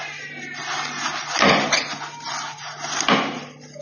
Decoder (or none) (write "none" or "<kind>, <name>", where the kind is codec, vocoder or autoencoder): none